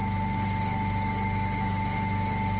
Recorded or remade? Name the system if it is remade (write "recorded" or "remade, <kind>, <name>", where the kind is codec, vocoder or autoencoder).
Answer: remade, autoencoder, DAC-VAE